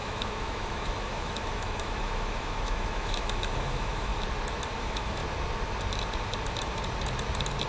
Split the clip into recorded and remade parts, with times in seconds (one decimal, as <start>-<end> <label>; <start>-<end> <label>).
0.0-4.1 remade; 4.1-4.8 recorded; 4.8-5.2 remade; 5.2-7.7 recorded